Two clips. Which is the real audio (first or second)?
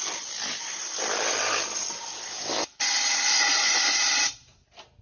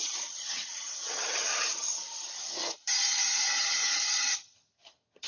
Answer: first